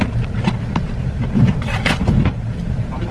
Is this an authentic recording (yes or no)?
no